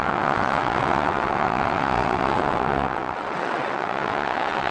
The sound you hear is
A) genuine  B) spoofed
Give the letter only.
B